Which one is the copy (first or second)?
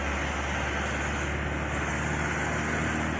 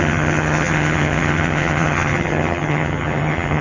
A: second